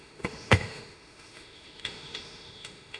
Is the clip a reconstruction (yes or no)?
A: yes